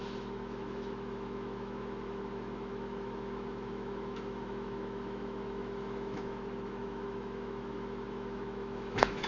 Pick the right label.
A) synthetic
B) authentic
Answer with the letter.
A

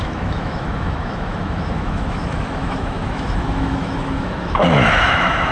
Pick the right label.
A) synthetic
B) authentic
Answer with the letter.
A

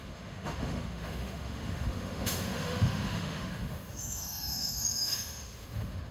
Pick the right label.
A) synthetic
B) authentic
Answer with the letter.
A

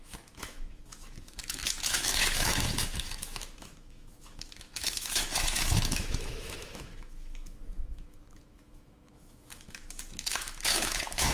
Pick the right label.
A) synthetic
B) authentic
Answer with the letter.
A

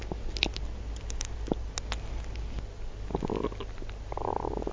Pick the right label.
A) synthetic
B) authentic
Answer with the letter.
B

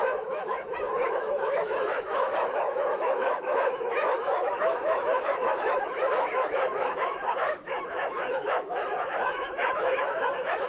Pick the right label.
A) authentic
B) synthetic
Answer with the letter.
B